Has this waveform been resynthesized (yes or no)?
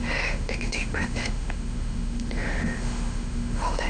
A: yes